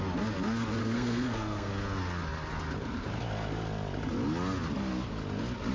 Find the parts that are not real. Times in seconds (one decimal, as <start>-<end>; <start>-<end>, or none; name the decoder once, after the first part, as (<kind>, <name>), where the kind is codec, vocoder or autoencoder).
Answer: 0.8-1.7 (codec, SNAC)